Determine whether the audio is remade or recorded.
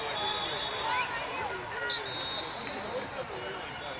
recorded